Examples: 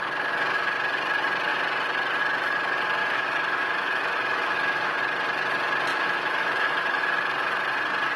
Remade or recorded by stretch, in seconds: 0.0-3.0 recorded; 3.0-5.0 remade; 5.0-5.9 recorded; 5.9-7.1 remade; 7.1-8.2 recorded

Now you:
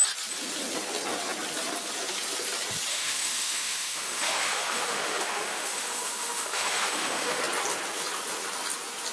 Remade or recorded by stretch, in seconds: 0.0-2.9 recorded; 2.9-7.4 remade; 7.4-9.1 recorded

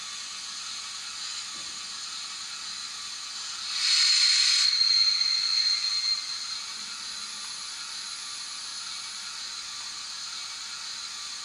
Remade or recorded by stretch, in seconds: 0.0-11.4 recorded